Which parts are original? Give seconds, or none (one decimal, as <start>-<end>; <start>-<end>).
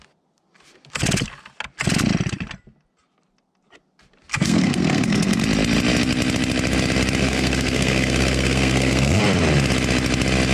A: 0.0-4.3; 5.4-7.2; 9.2-10.5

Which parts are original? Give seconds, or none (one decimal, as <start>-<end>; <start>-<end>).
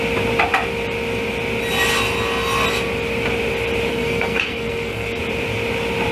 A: 0.0-3.9; 5.2-6.1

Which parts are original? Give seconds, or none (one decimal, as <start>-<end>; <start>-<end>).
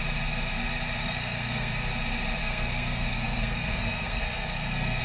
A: 0.0-1.0; 1.7-2.4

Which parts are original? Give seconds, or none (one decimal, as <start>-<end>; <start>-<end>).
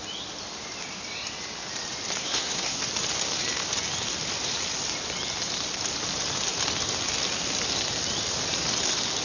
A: 0.0-2.2; 2.8-9.2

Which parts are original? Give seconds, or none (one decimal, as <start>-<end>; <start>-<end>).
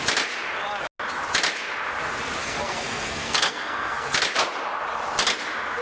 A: 0.0-2.4; 4.2-5.8